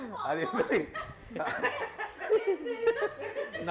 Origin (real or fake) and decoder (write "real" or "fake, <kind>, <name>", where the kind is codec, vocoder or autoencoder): real